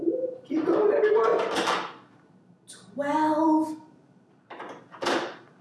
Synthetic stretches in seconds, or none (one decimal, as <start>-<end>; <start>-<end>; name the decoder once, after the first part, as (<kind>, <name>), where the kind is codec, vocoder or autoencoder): 0.0-1.3 (vocoder, BigVGAN v2); 3.9-5.6